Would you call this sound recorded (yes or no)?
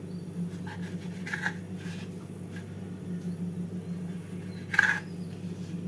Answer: yes